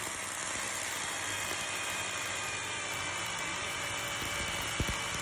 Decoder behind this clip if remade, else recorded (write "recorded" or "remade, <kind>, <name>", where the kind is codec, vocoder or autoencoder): recorded